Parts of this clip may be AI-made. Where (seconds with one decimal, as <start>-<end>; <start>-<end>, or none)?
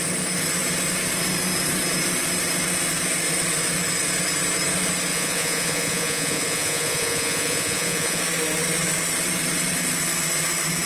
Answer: 5.1-8.2